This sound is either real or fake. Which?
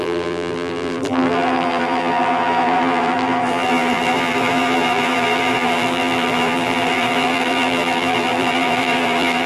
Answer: fake